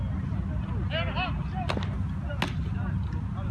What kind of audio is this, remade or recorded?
recorded